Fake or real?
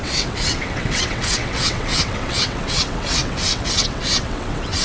fake